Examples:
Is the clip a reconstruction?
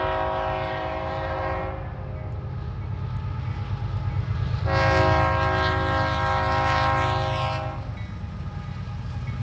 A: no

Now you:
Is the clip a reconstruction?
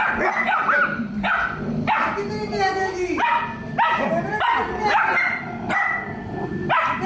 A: no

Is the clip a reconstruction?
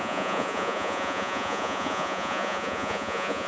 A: yes